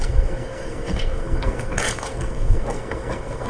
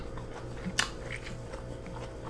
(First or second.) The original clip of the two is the second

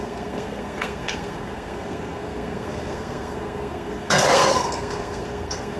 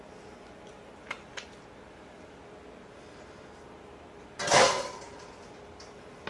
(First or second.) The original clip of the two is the second